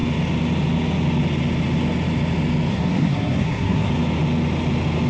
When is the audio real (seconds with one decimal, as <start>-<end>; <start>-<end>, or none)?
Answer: 0.0-2.7; 3.9-5.1